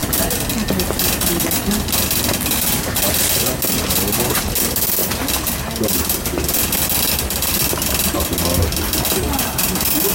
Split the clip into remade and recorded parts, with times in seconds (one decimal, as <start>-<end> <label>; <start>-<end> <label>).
0.0-10.1 recorded

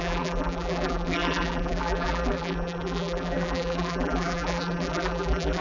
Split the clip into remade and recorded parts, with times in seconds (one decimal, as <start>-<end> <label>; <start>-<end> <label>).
0.0-5.6 remade

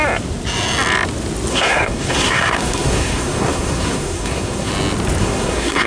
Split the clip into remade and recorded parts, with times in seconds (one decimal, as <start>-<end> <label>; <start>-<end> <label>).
0.0-1.5 recorded; 1.5-4.7 remade; 4.7-5.2 recorded; 5.2-5.9 remade

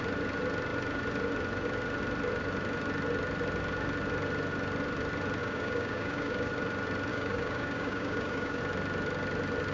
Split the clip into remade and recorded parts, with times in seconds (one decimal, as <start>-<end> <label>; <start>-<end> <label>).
0.0-5.4 recorded; 5.4-6.5 remade; 6.5-7.1 recorded; 7.1-8.6 remade; 8.6-9.7 recorded

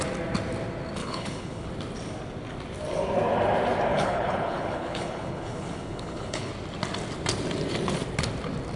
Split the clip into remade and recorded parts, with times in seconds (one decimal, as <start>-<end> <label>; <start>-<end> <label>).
0.0-1.0 recorded; 1.0-1.7 remade; 1.7-3.9 recorded; 3.9-6.5 remade; 6.5-8.8 recorded

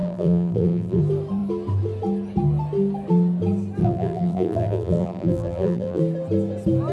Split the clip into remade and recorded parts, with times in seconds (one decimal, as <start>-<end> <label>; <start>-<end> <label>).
0.0-1.0 remade; 1.0-3.8 recorded; 3.8-6.0 remade; 6.0-6.9 recorded

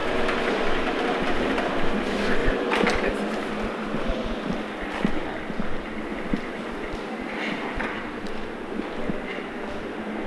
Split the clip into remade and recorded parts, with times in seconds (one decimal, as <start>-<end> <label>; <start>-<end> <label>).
0.0-2.4 recorded; 2.4-5.1 remade; 5.1-6.1 recorded; 6.1-7.8 remade; 7.8-10.3 recorded

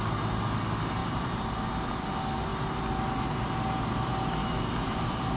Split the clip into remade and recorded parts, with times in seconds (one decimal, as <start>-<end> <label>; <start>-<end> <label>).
0.0-4.4 recorded; 4.4-5.0 remade; 5.0-5.4 recorded